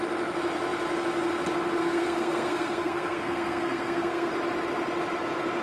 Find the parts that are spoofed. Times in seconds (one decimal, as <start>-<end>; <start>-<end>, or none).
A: 1.8-4.3